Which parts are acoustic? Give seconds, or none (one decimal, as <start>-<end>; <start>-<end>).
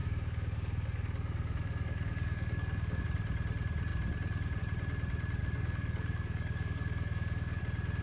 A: 3.0-5.4; 7.6-8.0